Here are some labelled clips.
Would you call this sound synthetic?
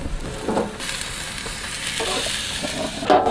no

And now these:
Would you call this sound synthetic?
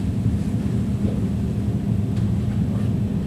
no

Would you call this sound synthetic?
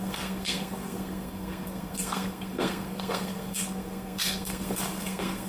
yes